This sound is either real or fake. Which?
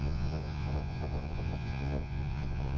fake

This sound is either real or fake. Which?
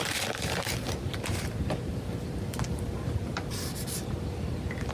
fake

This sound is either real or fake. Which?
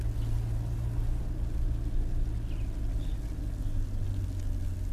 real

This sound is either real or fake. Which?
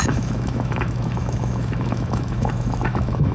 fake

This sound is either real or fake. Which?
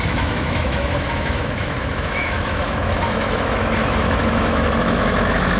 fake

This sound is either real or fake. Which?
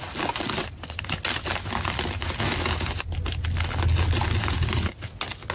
real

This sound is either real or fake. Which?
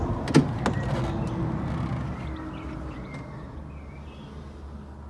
real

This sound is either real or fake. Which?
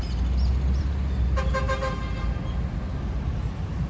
real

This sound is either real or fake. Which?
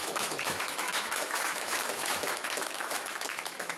fake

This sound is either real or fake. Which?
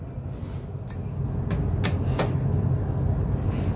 real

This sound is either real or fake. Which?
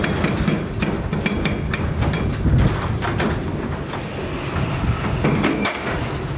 real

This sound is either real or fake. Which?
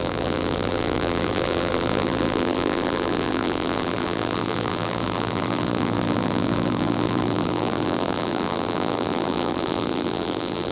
fake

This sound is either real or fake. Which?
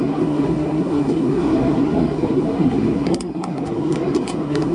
fake